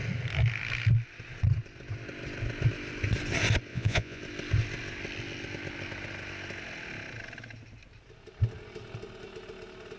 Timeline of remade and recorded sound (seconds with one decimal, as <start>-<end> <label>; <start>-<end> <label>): 0.0-3.7 recorded; 3.7-4.2 remade; 4.2-10.0 recorded